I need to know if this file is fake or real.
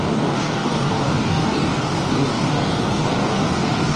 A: fake